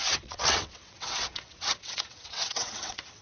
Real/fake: fake